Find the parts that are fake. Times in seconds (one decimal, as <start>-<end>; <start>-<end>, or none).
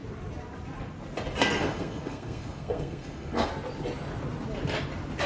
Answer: 1.4-3.5